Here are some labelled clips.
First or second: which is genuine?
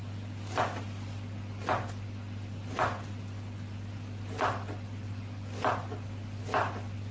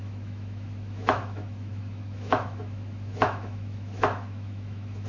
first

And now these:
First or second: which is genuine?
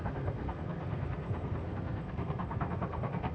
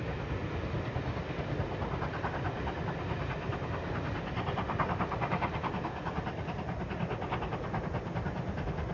second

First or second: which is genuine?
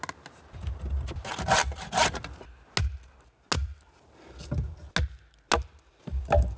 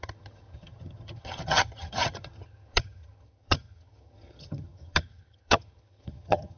first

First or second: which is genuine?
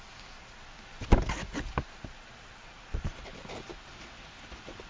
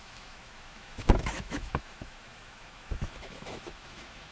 first